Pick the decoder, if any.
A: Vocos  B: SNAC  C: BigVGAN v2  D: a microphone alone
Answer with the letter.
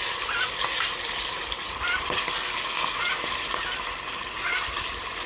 D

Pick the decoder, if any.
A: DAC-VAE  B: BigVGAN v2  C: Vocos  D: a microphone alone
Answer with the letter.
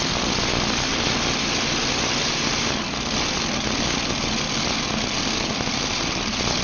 D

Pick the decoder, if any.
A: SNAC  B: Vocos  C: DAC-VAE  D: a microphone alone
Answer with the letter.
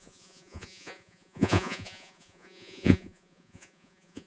B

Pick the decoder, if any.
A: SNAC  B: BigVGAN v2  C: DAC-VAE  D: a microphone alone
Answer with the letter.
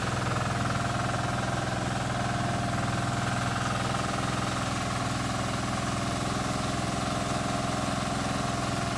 D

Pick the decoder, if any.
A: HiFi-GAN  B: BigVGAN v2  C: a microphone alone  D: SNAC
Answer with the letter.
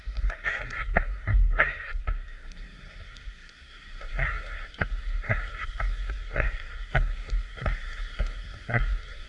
D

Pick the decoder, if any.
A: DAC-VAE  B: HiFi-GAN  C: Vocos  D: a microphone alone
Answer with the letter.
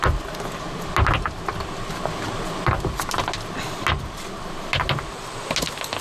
D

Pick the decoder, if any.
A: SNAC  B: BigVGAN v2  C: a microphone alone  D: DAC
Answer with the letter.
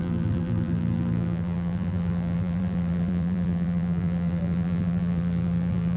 B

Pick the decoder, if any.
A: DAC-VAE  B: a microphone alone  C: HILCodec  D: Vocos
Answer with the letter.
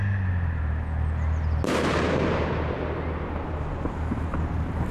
B